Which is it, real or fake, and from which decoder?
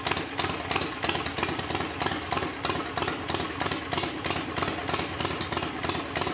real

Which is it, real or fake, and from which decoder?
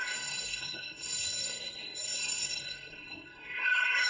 fake, codec, SNAC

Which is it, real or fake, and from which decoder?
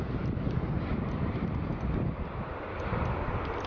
fake, vocoder, BigVGAN v2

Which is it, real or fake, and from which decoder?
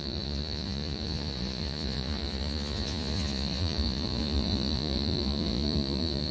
fake, vocoder, Vocos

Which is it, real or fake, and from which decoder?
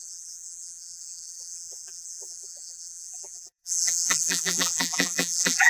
fake, vocoder, BigVGAN v2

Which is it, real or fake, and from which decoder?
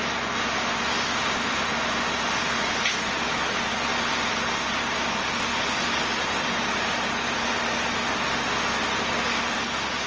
real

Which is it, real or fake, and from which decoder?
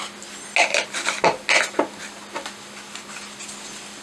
real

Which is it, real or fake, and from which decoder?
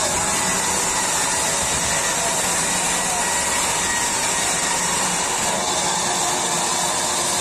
real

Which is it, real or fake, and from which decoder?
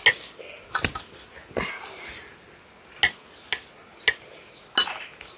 real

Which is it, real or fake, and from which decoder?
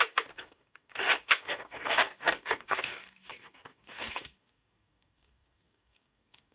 fake, codec, DAC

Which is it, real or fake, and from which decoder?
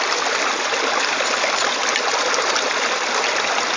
real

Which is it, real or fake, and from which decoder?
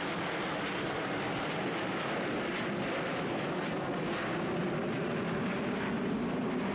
real